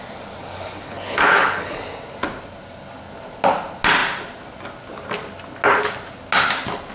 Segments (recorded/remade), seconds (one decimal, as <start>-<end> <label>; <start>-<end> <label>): 0.0-0.4 recorded; 0.4-1.8 remade; 1.8-6.9 recorded